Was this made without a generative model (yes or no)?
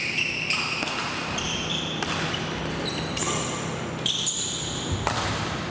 yes